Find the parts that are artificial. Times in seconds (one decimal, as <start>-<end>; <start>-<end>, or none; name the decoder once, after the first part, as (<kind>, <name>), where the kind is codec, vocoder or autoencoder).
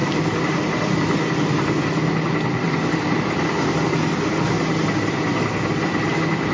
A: none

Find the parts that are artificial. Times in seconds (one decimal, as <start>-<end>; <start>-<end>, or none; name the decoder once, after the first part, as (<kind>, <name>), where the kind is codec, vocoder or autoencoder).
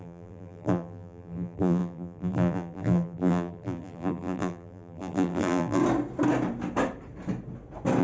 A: 0.0-5.8 (vocoder, BigVGAN v2)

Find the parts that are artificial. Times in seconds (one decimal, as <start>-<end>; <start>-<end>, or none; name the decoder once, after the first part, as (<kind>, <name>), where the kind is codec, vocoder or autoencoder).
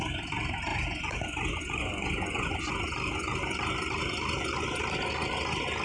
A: 0.7-2.7 (vocoder, Vocos)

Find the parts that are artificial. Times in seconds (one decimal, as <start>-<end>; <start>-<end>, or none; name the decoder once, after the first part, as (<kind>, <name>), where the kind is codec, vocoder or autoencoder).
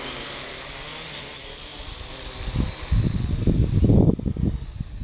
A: none